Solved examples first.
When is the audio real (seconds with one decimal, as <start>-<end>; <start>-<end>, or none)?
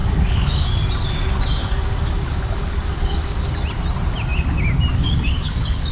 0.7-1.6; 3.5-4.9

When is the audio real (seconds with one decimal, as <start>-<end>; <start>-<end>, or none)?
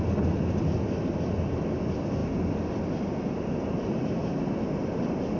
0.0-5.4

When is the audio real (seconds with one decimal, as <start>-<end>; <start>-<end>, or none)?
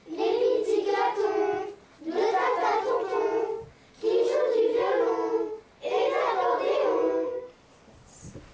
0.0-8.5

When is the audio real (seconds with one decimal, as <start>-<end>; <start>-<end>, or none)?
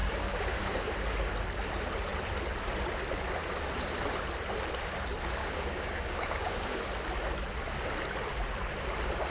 0.9-5.4; 6.9-9.3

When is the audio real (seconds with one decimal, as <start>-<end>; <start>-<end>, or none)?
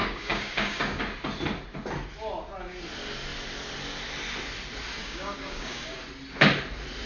1.0-5.0; 6.0-7.1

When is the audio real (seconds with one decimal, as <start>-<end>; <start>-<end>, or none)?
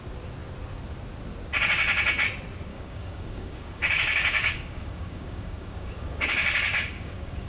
0.0-2.7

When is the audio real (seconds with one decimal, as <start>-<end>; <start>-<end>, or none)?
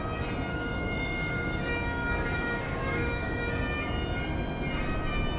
0.0-0.5; 3.5-5.4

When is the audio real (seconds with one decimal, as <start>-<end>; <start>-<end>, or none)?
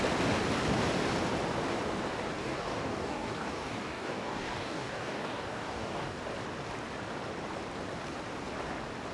0.0-2.4; 6.2-9.1